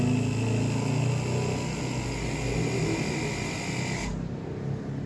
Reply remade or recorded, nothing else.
recorded